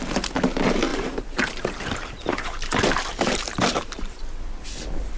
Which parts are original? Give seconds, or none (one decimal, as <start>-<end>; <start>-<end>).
0.0-0.9; 2.1-3.1; 4.2-5.2